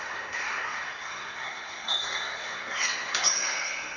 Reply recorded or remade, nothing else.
remade